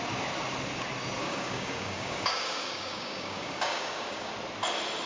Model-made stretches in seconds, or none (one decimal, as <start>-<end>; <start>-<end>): 1.2-4.3